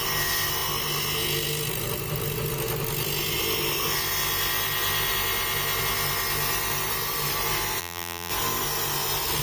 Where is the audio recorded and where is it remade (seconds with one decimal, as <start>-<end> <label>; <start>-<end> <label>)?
0.0-7.8 recorded; 7.8-8.3 remade; 8.3-9.4 recorded